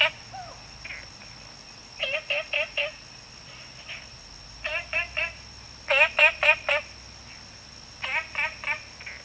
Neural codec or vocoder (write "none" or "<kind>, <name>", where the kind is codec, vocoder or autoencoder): none